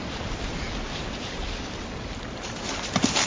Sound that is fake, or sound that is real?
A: real